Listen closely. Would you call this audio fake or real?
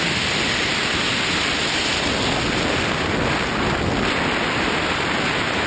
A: real